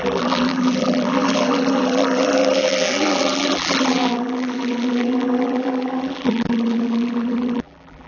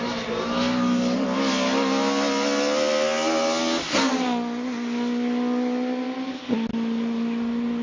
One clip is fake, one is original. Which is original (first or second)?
second